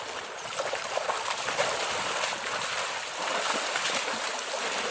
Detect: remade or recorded recorded